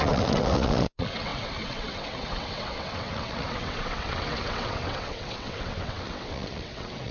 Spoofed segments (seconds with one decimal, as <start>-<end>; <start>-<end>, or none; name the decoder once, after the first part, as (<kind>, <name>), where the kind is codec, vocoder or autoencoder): 0.0-7.1 (vocoder, WaveNeXt)